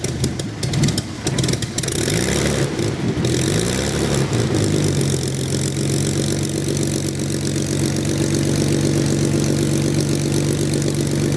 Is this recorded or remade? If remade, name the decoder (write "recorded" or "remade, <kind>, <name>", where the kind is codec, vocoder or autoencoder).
recorded